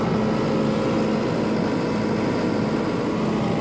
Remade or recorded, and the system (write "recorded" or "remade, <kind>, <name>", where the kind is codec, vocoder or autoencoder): recorded